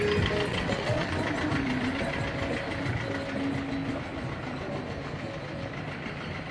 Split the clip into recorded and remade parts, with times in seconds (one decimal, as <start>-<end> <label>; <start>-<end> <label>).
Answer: 0.0-0.5 recorded; 0.5-1.1 remade; 1.1-6.5 recorded